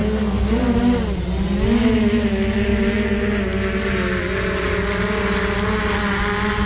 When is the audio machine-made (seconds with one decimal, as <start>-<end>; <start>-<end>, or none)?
0.0-0.6